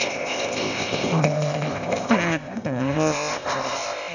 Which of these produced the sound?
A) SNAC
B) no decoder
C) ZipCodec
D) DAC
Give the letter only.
C